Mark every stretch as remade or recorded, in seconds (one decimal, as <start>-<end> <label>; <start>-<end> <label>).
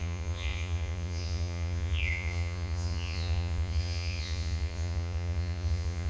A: 0.0-6.1 remade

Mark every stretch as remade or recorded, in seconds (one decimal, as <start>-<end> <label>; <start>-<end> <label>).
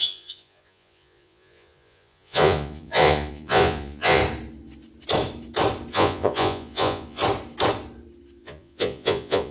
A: 0.0-4.2 remade; 4.2-5.9 recorded; 5.9-7.2 remade; 7.2-8.4 recorded; 8.4-9.5 remade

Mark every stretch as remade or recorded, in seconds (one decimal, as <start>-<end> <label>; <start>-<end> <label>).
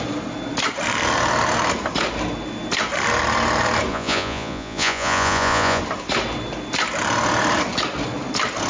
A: 0.0-3.9 recorded; 3.9-5.8 remade; 5.8-8.7 recorded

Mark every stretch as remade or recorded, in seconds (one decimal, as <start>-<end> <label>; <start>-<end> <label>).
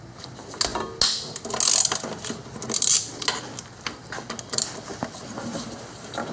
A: 0.0-6.3 recorded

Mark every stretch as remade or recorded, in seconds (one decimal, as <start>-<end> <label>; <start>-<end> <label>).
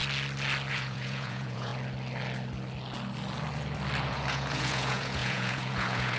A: 0.0-0.7 recorded; 0.7-1.7 remade; 1.7-4.0 recorded; 4.0-6.2 remade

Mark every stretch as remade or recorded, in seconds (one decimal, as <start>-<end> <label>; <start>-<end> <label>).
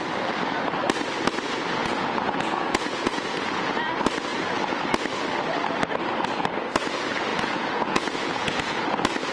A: 0.0-1.8 recorded; 1.8-3.8 remade; 3.8-7.3 recorded; 7.3-8.8 remade; 8.8-9.3 recorded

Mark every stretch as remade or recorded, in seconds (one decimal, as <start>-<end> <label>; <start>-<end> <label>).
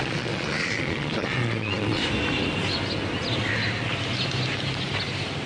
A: 0.0-2.0 remade; 2.0-5.5 recorded